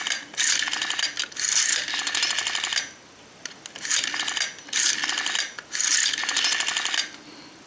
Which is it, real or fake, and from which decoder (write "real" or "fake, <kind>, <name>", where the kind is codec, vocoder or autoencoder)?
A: real